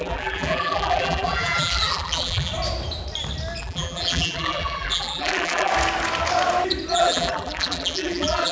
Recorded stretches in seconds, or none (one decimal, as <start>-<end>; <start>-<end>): 2.5-3.6; 5.7-6.9